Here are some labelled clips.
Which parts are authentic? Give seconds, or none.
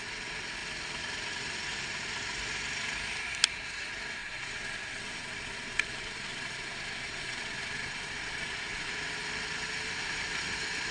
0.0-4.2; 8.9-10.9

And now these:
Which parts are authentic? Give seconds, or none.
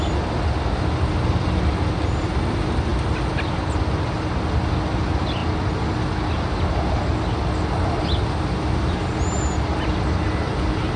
0.0-11.0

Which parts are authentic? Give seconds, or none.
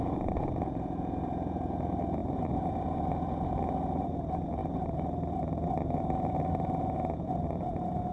4.6-5.8